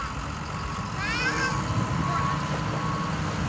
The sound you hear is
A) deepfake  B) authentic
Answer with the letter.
B